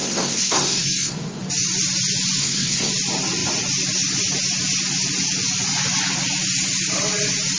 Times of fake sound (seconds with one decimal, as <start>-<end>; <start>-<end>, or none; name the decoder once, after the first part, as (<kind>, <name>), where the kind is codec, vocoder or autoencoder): 0.0-1.4 (codec, SNAC); 2.4-2.9